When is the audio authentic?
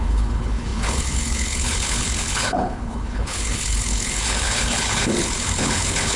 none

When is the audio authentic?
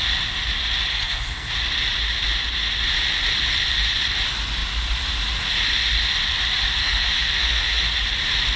0.0-0.9; 1.5-6.8; 7.8-8.6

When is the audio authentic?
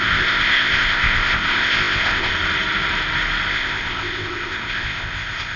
2.3-3.5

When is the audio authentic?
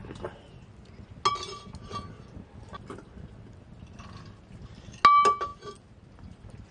0.0-6.7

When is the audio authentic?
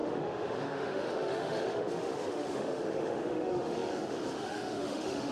none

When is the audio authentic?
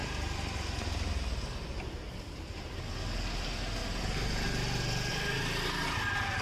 0.0-6.4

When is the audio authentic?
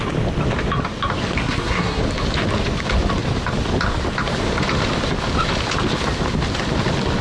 0.0-1.4; 2.0-7.2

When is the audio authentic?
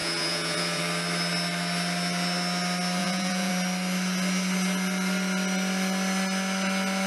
0.8-3.0; 3.5-7.1